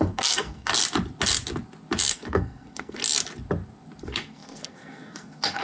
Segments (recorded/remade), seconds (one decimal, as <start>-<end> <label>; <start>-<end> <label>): 0.0-0.7 remade; 0.7-2.1 recorded; 2.1-3.0 remade; 3.0-4.0 recorded; 4.0-5.6 remade